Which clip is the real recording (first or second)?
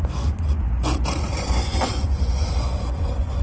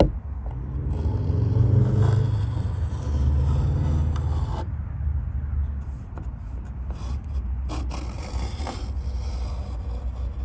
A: second